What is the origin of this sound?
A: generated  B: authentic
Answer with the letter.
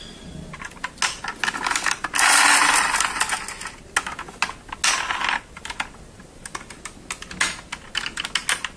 B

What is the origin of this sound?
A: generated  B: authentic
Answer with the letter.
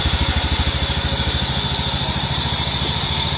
B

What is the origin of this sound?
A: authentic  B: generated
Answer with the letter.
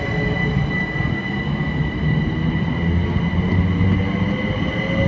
A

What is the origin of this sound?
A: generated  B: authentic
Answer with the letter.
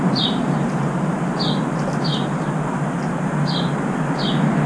B